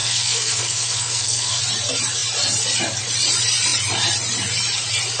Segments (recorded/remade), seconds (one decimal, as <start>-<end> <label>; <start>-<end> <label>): 0.0-1.6 remade; 1.6-5.2 recorded